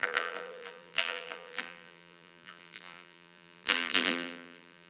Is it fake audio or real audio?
fake